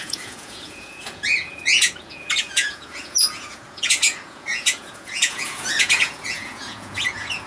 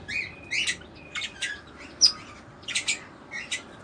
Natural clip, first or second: second